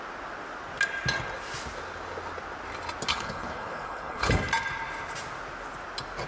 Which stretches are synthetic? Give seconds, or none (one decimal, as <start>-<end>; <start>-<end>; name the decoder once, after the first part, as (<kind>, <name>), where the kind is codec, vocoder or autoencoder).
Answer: 3.1-4.3 (codec, HILCodec)